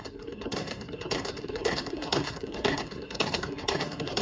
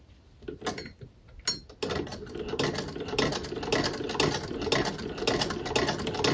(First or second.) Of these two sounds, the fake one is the first